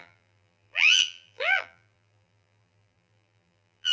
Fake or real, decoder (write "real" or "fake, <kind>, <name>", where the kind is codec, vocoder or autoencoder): fake, vocoder, BigVGAN v2